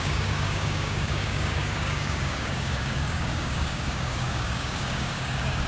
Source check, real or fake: fake